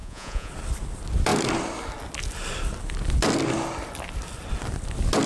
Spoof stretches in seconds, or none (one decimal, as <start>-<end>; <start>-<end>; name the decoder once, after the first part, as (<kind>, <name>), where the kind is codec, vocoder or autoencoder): 0.0-0.5 (vocoder, Vocos)